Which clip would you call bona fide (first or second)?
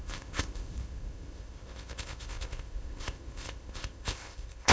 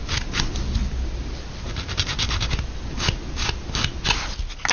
second